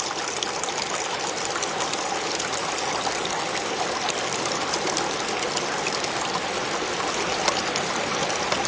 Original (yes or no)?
yes